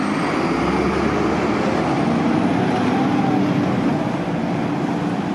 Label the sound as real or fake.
real